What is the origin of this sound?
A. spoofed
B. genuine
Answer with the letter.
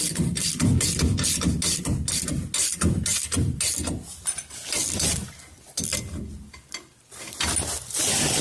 B